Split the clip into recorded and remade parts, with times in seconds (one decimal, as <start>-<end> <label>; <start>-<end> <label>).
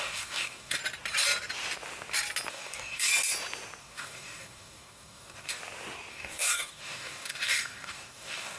0.0-0.8 remade; 0.8-2.5 recorded; 2.5-3.1 remade; 3.1-3.8 recorded; 3.8-5.6 remade; 5.6-6.1 recorded; 6.1-8.6 remade